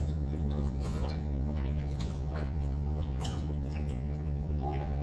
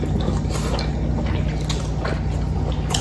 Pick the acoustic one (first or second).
second